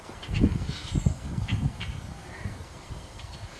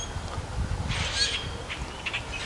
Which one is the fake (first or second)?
first